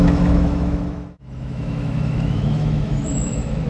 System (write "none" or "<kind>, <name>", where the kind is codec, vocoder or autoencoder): autoencoder, DAC-VAE